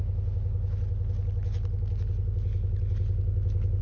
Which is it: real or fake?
real